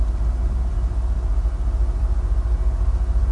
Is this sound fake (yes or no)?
no